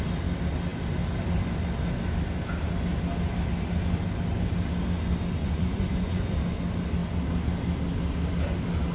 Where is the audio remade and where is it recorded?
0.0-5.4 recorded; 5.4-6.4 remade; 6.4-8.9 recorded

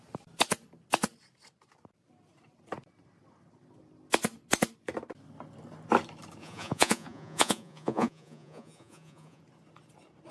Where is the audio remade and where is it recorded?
0.0-6.4 recorded; 6.4-9.4 remade; 9.4-10.3 recorded

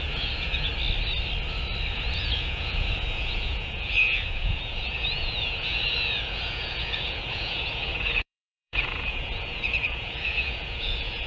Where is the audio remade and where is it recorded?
0.0-0.7 remade; 0.7-1.9 recorded; 1.9-11.3 remade

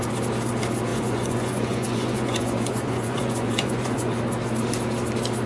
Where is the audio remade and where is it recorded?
0.0-0.9 recorded; 0.9-4.2 remade; 4.2-5.5 recorded

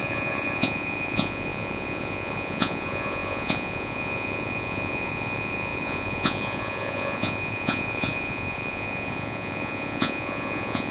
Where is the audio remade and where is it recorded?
0.0-10.9 remade

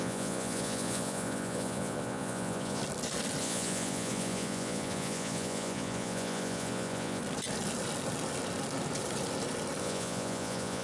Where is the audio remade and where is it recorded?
0.0-2.8 remade; 2.8-3.4 recorded; 3.4-7.2 remade; 7.2-9.8 recorded; 9.8-10.8 remade

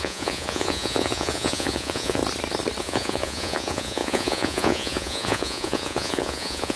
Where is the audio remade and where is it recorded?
0.0-2.2 remade; 2.2-2.8 recorded; 2.8-6.8 remade